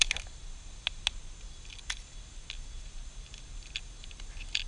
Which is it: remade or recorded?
recorded